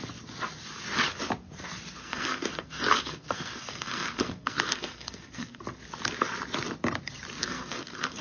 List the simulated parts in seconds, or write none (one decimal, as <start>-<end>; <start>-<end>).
2.0-5.6; 7.4-8.2